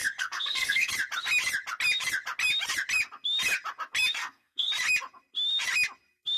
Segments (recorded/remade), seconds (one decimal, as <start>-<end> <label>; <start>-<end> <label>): 0.0-0.9 remade; 0.9-4.2 recorded; 4.2-4.7 remade; 4.7-6.4 recorded